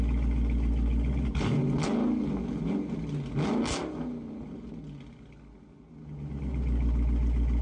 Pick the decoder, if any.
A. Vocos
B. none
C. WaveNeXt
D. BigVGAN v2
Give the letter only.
B